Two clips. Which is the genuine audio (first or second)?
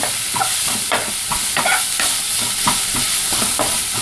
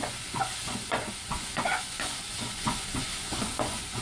first